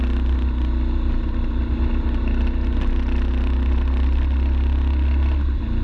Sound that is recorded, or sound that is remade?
recorded